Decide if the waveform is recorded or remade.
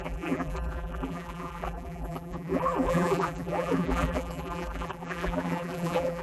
remade